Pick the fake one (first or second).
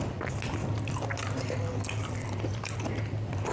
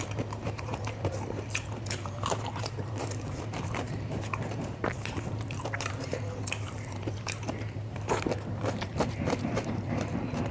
second